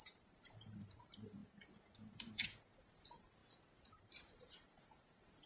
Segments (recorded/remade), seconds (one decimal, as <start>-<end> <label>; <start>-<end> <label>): 0.0-1.4 remade; 1.4-2.1 recorded; 2.1-3.4 remade; 3.4-4.0 recorded; 4.0-5.5 remade